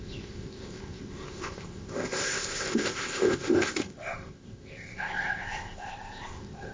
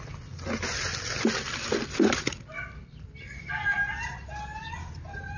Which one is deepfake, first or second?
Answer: first